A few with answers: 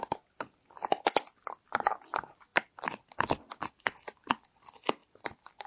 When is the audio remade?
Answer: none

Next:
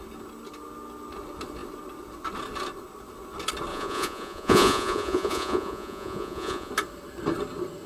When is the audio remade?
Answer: 3.7-6.7 (vocoder, Vocos)

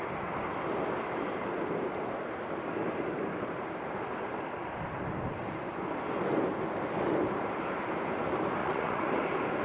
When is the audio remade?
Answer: 8.6-9.1 (vocoder, Vocos)

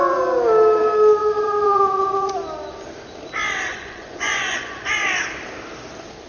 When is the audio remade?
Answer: 1.2-2.3 (vocoder, Vocos); 3.7-4.9

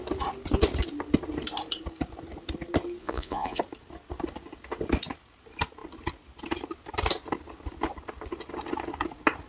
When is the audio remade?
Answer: 3.0-3.6 (vocoder, Vocos)

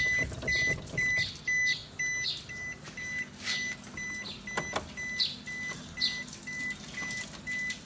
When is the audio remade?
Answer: none

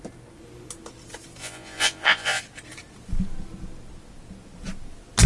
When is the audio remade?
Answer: 1.4-2.4 (vocoder, Vocos)